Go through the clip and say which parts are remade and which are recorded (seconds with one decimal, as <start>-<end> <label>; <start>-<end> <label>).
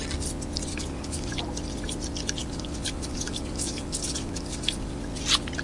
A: 0.0-0.7 recorded; 0.7-1.4 remade; 1.4-2.4 recorded; 2.4-5.0 remade; 5.0-5.6 recorded